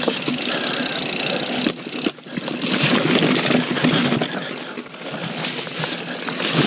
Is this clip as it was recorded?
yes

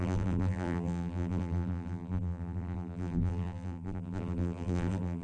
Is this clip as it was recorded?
no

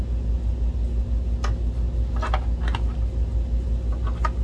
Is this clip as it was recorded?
yes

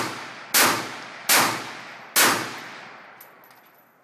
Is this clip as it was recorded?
yes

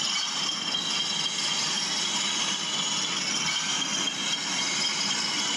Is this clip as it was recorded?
yes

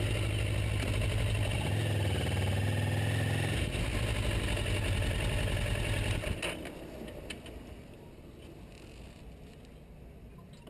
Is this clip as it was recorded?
yes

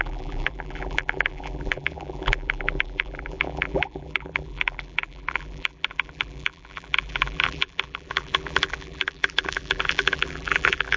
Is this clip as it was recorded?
no